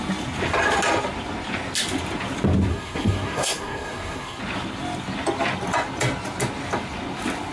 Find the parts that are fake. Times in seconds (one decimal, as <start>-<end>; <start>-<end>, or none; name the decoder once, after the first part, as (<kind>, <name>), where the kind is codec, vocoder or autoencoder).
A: 2.7-4.4 (codec, SNAC)